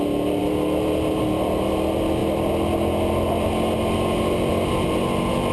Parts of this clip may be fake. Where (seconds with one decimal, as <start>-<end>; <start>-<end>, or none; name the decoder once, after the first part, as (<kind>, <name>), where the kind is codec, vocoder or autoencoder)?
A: none

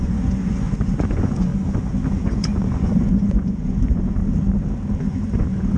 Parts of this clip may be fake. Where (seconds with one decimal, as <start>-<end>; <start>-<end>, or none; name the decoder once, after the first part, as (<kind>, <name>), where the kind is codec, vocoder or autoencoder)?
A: 0.0-1.5 (vocoder, Vocos); 2.2-4.2; 5.0-5.8

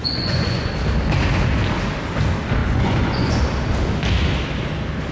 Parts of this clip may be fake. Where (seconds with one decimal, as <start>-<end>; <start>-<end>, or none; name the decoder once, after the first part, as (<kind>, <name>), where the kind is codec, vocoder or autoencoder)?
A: 0.0-0.7 (vocoder, Vocos); 2.6-3.4

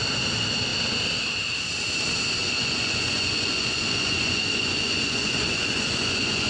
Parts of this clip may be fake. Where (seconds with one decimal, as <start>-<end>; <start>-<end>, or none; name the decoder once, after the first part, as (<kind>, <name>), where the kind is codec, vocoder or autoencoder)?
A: 2.4-6.5 (vocoder, Vocos)

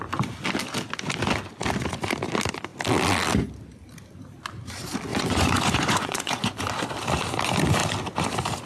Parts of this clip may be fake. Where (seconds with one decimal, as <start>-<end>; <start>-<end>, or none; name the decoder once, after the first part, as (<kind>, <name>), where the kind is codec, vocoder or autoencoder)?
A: 5.1-6.6 (vocoder, Vocos)

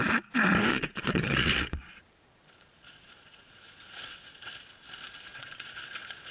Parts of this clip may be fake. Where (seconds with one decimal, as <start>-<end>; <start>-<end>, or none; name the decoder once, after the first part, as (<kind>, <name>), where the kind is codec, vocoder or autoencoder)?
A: 0.7-4.5 (vocoder, Vocos); 5.3-6.3

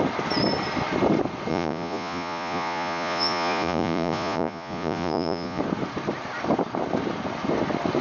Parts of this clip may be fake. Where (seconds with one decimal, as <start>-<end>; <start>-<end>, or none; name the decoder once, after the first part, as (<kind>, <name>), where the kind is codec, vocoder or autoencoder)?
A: 1.5-5.6 (vocoder, Vocos)